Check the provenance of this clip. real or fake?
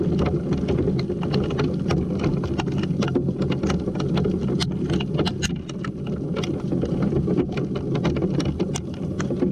real